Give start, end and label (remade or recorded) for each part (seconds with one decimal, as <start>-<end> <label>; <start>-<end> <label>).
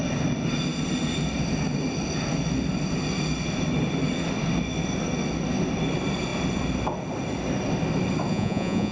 0.0-8.3 recorded; 8.3-8.9 remade